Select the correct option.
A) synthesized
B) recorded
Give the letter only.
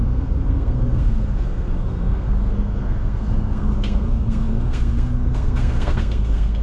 A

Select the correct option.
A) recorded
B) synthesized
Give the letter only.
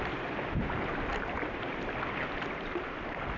A